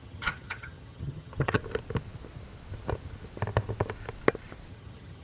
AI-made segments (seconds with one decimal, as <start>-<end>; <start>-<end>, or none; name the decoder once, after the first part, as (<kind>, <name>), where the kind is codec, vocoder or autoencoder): 0.0-1.6 (vocoder, HiFi-GAN); 4.7-5.2